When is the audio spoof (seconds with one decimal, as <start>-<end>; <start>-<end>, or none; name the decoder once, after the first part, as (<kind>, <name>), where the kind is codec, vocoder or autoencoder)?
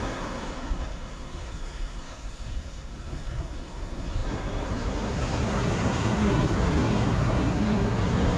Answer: 0.0-8.4 (codec, SNAC)